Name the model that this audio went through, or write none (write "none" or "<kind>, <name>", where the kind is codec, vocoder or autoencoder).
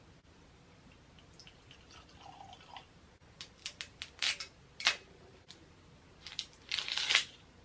none